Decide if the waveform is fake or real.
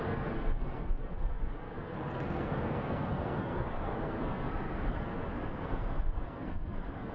fake